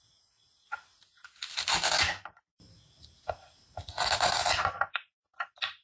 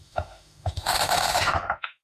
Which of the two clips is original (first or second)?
first